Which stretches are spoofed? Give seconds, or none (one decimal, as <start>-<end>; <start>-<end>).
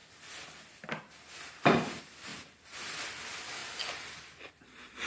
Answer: none